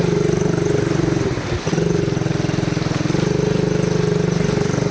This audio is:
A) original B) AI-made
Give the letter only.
A